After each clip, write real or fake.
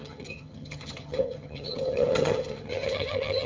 fake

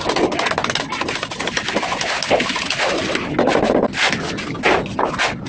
real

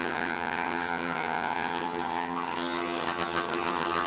fake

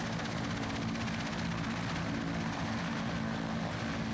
real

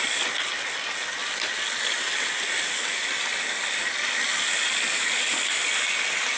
real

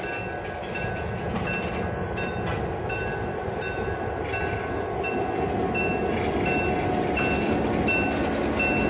real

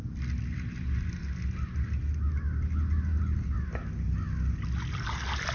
real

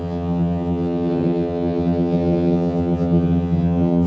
fake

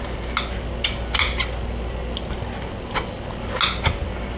real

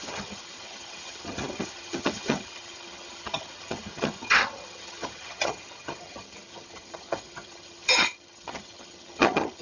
fake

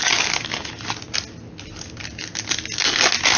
real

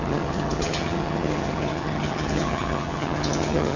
fake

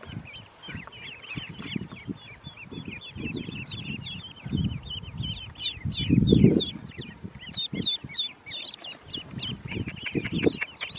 real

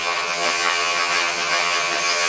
fake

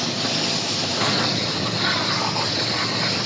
real